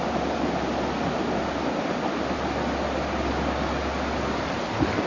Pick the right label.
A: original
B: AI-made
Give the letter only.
A